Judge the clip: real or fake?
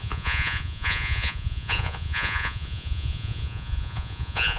fake